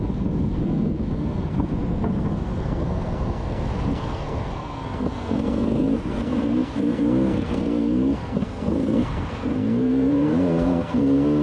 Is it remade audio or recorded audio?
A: remade